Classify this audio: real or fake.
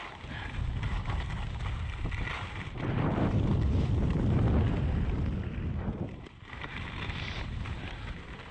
real